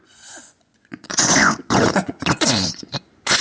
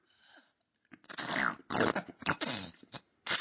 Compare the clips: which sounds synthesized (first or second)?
first